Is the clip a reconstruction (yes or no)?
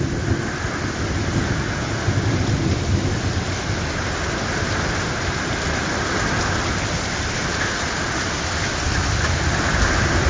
no